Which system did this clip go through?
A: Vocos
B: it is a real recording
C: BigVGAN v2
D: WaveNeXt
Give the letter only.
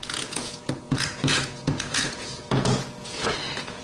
A